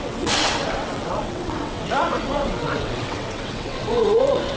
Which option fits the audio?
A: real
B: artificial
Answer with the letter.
B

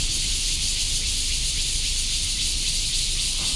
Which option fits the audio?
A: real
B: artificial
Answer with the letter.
B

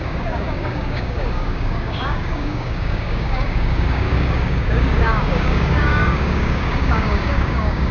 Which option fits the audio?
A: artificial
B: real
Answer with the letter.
A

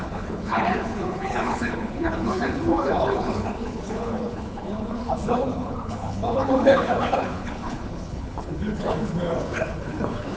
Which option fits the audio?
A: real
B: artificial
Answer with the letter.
B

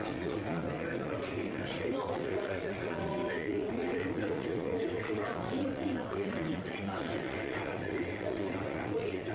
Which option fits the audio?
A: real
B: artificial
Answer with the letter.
B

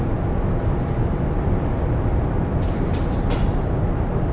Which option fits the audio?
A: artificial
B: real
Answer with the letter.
B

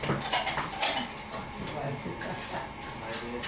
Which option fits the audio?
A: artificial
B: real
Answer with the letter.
B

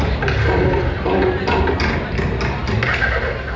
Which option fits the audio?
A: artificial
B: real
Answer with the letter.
B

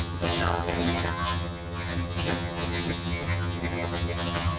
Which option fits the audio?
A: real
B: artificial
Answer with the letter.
B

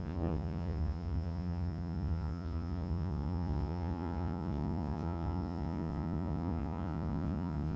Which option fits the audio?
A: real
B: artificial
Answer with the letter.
B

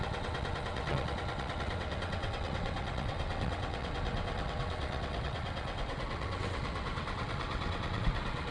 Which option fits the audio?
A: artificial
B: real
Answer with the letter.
A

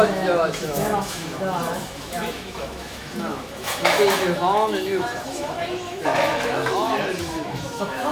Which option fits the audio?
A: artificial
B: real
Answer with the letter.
A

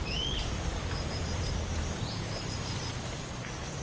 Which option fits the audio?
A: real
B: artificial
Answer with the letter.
B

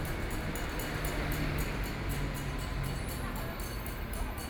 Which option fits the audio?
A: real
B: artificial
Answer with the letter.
A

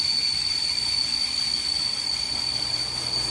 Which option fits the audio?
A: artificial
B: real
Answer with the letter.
B